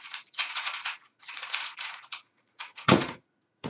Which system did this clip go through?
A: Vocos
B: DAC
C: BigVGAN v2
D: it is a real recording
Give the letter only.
A